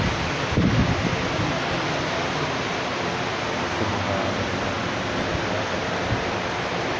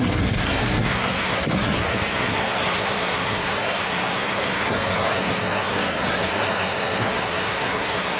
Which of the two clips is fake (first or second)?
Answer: second